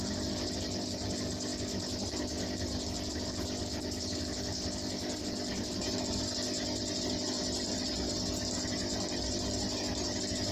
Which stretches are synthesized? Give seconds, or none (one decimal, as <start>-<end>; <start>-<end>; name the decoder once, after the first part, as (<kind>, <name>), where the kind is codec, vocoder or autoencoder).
none